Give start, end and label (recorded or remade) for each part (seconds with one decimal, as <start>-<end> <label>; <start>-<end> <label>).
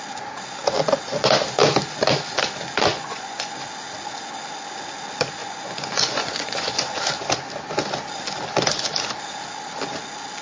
0.0-2.9 recorded; 2.9-3.5 remade; 3.5-5.4 recorded; 5.4-7.0 remade; 7.0-10.4 recorded